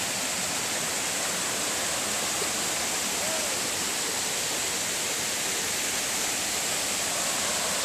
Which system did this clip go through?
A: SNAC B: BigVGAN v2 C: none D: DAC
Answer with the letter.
C